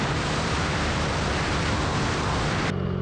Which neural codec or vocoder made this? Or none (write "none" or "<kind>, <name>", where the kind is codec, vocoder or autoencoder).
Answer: none